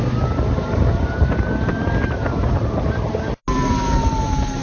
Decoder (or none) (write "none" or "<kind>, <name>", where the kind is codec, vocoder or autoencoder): none